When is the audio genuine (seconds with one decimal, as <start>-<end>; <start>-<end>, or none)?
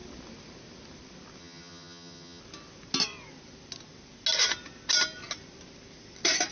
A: 0.0-1.4; 2.4-6.5